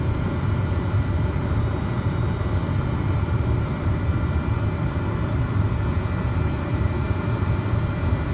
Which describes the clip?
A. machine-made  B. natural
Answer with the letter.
B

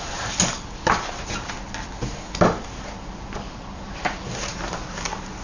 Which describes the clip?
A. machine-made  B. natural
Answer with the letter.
B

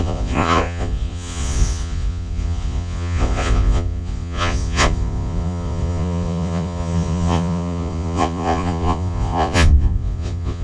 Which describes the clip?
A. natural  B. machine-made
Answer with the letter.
B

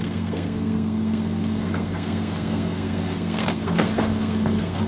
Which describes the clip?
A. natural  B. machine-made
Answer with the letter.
B